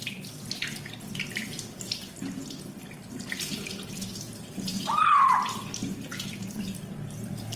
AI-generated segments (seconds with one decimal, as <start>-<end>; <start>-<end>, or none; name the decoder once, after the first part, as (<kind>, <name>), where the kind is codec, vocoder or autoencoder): none